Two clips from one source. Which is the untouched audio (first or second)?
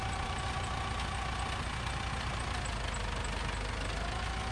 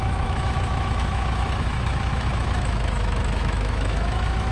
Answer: first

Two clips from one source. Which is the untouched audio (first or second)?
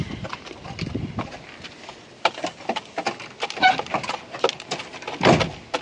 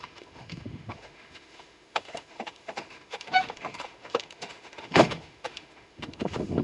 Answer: first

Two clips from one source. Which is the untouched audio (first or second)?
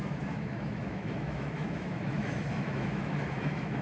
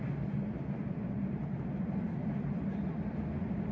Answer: second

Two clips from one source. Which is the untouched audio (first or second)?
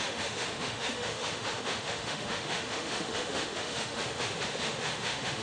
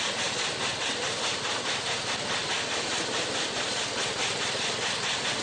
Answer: second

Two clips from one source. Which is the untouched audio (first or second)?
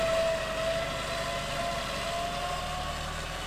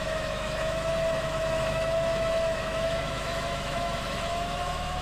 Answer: first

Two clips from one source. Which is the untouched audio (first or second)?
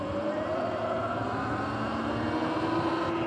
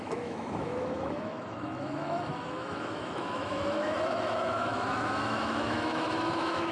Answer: first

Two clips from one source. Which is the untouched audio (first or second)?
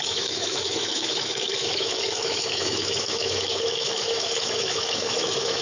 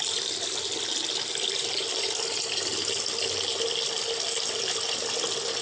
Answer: second